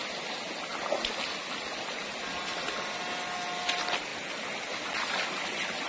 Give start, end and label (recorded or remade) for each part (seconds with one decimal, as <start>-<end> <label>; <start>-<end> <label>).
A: 0.0-5.9 recorded